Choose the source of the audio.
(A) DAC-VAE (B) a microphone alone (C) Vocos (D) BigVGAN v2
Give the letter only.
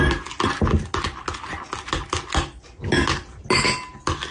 B